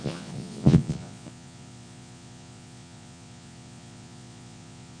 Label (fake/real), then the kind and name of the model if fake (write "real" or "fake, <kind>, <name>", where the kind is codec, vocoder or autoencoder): fake, vocoder, Vocos